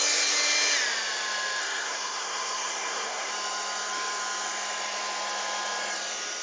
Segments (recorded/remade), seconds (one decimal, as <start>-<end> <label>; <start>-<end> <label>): 0.0-1.6 recorded; 1.6-3.3 remade; 3.3-6.4 recorded